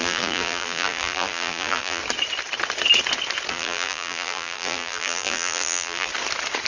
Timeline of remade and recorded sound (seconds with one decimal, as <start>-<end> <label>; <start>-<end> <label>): 0.0-2.0 remade; 2.0-3.5 recorded; 3.5-6.1 remade; 6.1-6.7 recorded